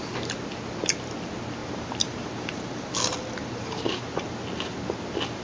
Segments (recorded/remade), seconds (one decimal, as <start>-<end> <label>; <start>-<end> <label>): 0.0-1.6 recorded; 1.6-2.9 remade; 2.9-3.4 recorded; 3.4-4.2 remade; 4.2-5.4 recorded